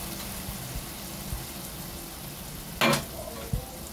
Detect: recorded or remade recorded